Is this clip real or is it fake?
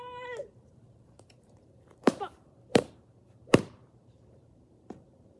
fake